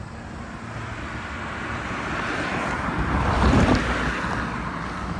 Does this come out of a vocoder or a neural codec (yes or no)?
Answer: no